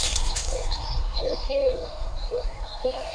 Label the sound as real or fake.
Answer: fake